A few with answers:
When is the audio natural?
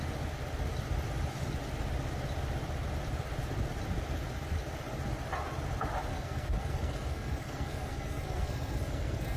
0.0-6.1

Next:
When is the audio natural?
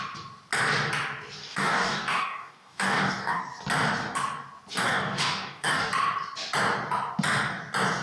0.0-1.4; 3.4-4.7; 5.9-8.0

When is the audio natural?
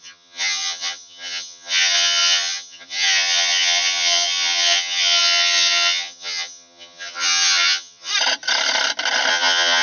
8.1-9.3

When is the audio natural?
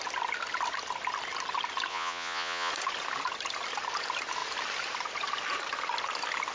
0.0-1.9; 2.7-6.5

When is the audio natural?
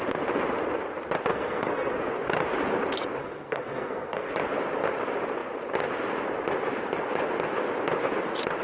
0.0-1.3; 2.0-3.2; 4.3-8.6